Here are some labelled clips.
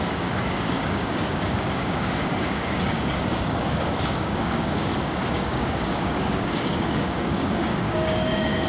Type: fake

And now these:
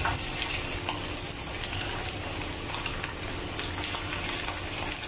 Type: real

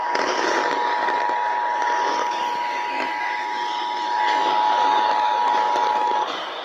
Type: fake